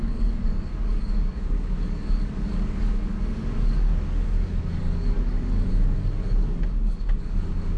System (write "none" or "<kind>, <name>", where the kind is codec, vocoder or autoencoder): codec, DAC